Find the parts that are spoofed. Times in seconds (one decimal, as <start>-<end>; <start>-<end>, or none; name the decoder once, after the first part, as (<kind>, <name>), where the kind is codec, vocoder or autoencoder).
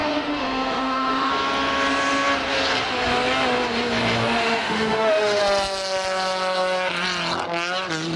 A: 0.0-1.3 (autoencoder, DAC-VAE); 4.4-5.4